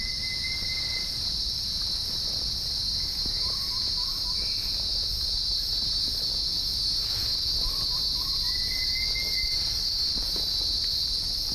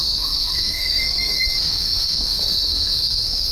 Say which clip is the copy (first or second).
second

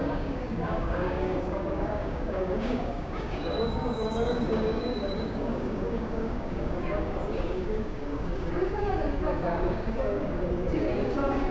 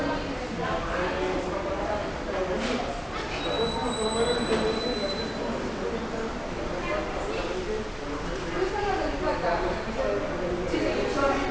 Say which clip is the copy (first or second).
first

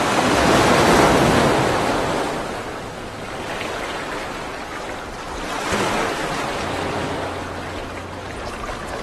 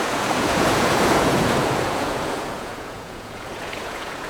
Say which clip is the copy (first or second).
second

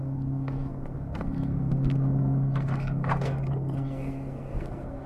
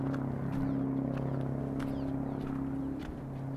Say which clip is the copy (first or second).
first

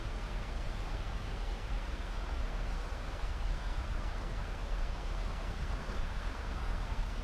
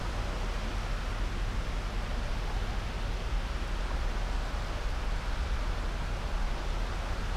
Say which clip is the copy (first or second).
first